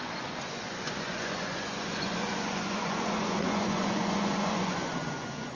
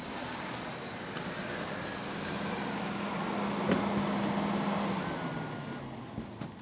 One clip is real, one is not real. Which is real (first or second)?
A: second